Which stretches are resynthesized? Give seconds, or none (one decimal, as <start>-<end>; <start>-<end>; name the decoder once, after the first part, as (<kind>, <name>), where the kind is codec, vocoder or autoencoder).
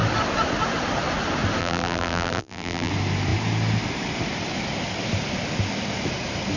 1.6-2.9 (vocoder, BigVGAN v2)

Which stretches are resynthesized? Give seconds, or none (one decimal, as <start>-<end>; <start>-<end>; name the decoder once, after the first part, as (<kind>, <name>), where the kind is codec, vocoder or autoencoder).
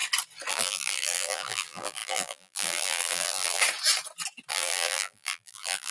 0.5-3.6 (vocoder, BigVGAN v2); 4.5-5.9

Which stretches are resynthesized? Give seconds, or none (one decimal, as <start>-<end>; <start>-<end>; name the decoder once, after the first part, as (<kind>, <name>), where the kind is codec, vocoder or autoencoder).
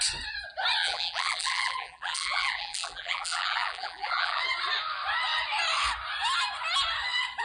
0.8-4.4 (vocoder, BigVGAN v2)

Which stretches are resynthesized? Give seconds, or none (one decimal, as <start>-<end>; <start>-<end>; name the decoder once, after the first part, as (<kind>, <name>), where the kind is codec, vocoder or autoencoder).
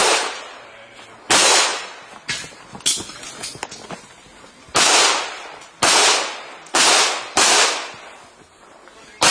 0.0-1.0 (vocoder, BigVGAN v2)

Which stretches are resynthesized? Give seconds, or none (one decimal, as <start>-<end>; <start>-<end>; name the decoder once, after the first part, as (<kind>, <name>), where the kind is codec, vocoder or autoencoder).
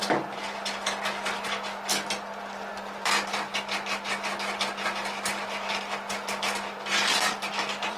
2.7-3.5 (vocoder, BigVGAN v2); 4.8-8.0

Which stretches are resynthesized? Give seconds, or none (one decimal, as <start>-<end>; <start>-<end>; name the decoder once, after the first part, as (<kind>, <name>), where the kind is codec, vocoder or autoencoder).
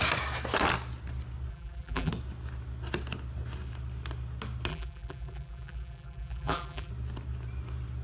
1.5-2.1 (vocoder, BigVGAN v2); 4.7-6.9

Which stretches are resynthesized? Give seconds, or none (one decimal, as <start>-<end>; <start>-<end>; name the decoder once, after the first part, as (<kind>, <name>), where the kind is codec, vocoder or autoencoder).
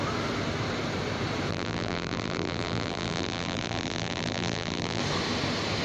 1.5-5.0 (vocoder, BigVGAN v2)